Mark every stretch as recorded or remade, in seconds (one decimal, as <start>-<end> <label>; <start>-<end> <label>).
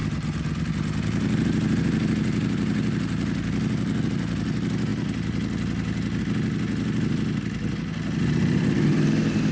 0.0-0.7 remade; 0.7-9.5 recorded